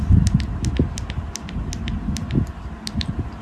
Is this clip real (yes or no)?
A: yes